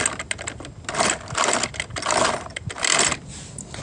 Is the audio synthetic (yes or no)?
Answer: no